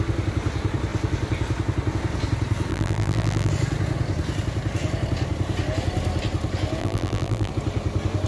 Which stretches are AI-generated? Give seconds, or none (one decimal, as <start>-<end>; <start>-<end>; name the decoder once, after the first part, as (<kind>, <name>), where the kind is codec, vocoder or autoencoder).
2.7-3.5 (vocoder, BigVGAN v2); 6.8-7.5